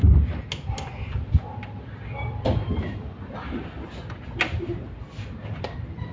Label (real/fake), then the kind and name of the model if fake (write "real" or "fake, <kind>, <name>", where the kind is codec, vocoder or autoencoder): real